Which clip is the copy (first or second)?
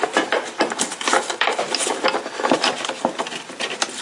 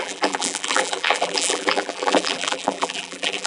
second